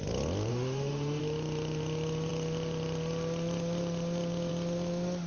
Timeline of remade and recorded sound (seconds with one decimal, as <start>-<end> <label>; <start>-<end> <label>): 0.0-0.5 recorded; 0.5-1.2 remade; 1.2-5.3 recorded